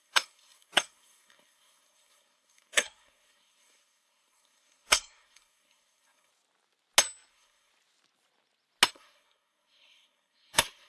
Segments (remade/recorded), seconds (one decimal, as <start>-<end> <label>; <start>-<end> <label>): 0.0-6.3 remade; 6.3-7.3 recorded; 7.3-7.7 remade; 7.7-8.9 recorded; 8.9-10.9 remade